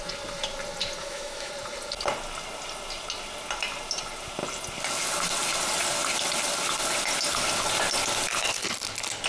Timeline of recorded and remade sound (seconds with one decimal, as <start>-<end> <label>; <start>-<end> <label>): 0.0-1.0 recorded; 1.0-1.5 remade; 1.5-9.3 recorded